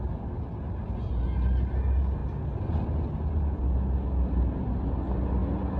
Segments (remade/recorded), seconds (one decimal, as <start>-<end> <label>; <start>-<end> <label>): 0.0-5.8 recorded